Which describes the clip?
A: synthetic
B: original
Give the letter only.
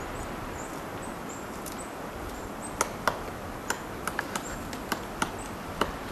B